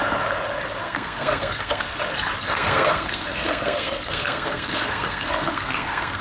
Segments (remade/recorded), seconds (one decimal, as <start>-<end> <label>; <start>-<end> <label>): 0.0-0.8 recorded; 0.8-2.0 remade; 2.0-2.4 recorded; 2.4-6.2 remade